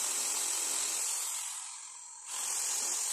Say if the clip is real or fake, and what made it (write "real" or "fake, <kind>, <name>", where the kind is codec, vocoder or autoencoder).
real